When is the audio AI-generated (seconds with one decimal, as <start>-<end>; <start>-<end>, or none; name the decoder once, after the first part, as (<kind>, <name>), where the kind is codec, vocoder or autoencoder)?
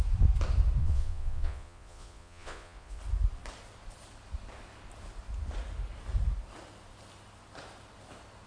0.8-3.0 (vocoder, Vocos)